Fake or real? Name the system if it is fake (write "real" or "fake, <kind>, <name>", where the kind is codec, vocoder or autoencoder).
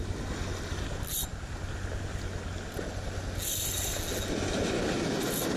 real